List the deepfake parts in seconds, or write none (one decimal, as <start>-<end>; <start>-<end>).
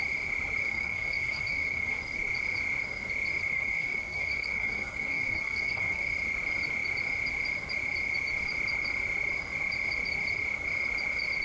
0.6-2.0; 3.4-6.0